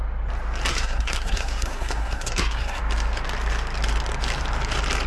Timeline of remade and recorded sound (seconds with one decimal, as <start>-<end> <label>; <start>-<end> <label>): 0.0-0.7 recorded; 0.7-2.8 remade; 2.8-5.1 recorded

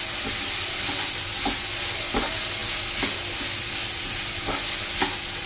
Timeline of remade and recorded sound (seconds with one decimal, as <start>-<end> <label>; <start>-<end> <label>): 0.0-5.5 recorded

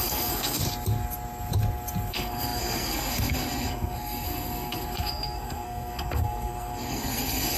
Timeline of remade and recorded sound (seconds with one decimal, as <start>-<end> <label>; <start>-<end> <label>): 0.0-0.6 remade; 0.6-2.1 recorded; 2.1-7.6 remade

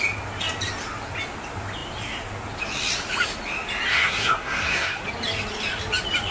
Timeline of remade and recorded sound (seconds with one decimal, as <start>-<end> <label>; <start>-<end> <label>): 0.0-3.9 recorded; 3.9-5.0 remade; 5.0-6.3 recorded